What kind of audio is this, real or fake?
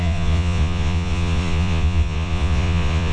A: fake